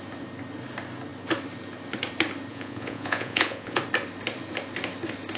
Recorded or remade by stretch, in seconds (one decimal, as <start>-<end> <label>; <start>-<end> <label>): 0.0-2.5 recorded; 2.5-3.8 remade; 3.8-5.4 recorded